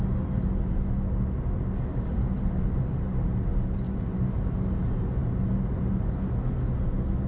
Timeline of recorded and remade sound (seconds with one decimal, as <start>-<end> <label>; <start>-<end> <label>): 0.0-7.3 recorded